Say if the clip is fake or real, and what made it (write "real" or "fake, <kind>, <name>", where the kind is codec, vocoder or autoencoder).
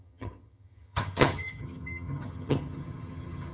fake, vocoder, HiFi-GAN